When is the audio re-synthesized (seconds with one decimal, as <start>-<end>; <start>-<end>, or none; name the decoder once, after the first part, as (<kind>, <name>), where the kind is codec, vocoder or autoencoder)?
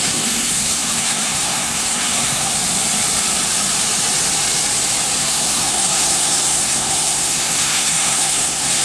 0.0-2.5 (codec, SNAC); 5.2-8.8